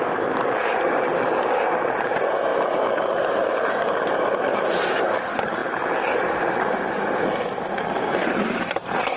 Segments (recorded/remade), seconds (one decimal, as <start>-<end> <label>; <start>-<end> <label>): 0.0-4.5 recorded; 4.5-5.0 remade; 5.0-5.6 recorded; 5.6-6.5 remade; 6.5-9.2 recorded